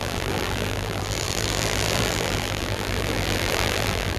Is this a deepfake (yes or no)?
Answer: yes